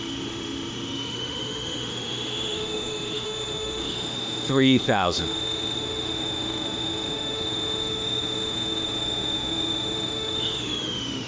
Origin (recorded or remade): remade